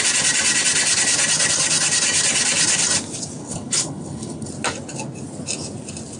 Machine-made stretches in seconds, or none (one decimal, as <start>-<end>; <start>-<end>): 3.4-4.5